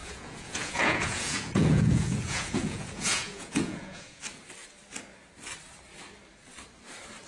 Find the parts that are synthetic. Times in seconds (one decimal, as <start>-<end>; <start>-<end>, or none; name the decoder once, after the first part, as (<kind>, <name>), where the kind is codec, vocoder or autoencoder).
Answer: 0.0-4.2 (vocoder, Vocos)